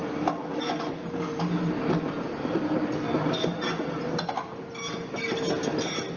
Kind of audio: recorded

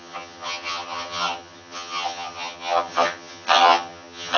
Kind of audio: remade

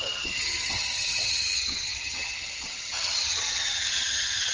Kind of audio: remade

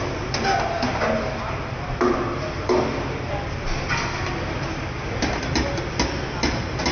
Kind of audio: recorded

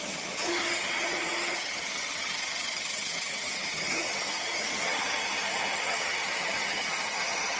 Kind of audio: remade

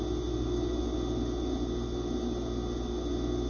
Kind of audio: recorded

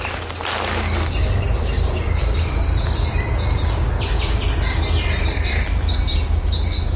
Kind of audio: recorded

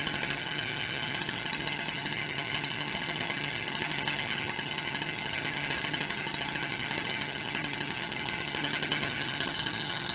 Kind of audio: remade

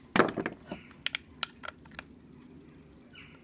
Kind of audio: recorded